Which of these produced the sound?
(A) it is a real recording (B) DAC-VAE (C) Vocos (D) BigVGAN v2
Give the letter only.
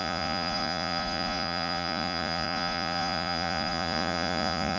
C